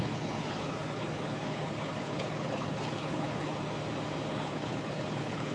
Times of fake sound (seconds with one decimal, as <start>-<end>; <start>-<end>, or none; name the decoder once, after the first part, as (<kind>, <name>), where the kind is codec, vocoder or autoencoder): 0.0-3.6 (codec, HILCodec); 4.3-5.5